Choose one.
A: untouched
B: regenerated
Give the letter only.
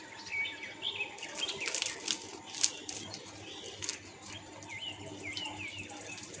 A